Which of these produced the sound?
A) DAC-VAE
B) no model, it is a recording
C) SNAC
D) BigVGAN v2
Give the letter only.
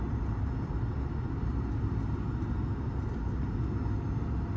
B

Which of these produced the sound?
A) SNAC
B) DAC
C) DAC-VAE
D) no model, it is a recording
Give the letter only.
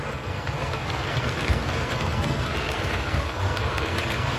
A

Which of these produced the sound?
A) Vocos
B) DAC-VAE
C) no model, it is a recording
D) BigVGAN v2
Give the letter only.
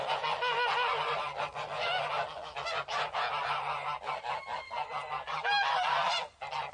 C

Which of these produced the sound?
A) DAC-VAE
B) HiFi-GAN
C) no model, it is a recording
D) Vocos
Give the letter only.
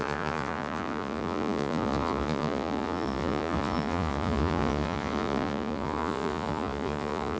D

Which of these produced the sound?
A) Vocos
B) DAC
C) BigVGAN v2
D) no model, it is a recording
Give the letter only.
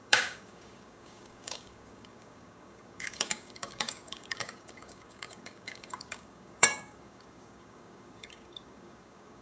B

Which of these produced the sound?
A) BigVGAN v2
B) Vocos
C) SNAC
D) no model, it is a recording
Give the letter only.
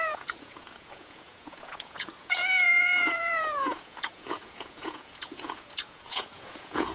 B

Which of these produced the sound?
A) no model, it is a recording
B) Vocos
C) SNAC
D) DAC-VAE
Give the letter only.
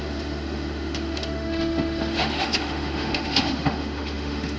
D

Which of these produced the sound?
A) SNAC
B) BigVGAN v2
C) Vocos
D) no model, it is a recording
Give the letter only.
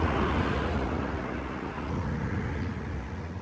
C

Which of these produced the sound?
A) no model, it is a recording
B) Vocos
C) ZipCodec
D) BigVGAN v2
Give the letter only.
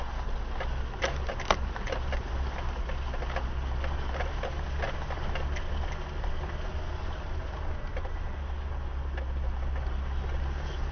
A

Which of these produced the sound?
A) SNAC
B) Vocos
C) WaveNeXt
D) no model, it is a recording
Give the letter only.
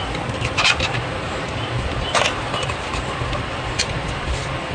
D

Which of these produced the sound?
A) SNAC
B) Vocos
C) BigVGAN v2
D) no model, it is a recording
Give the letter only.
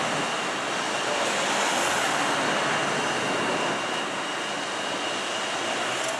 D